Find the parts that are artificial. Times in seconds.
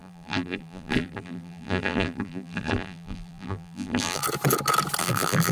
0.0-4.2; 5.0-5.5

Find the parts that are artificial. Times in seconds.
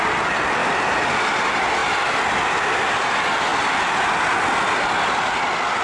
3.5-4.3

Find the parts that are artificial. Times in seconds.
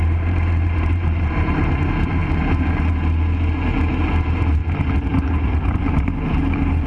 0.0-2.2; 3.9-4.6; 5.4-6.9